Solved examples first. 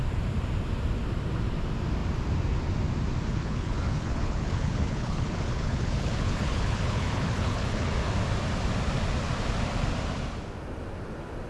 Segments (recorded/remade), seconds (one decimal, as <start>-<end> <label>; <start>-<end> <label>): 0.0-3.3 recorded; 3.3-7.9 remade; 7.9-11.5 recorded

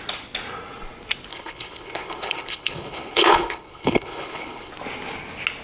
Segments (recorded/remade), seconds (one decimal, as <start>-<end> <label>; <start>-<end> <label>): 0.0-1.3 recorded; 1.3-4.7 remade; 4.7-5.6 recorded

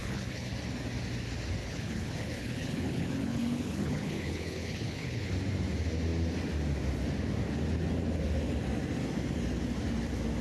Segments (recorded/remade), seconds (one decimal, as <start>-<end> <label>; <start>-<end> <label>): 0.0-0.5 remade; 0.5-1.6 recorded; 1.6-5.3 remade; 5.3-10.4 recorded